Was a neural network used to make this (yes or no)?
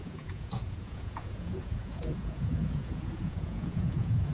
yes